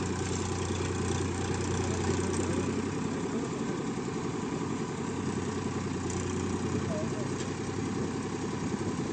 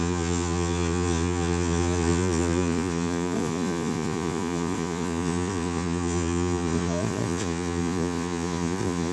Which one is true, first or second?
first